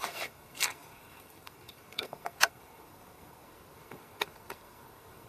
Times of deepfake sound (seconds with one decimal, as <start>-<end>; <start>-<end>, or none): 0.0-5.3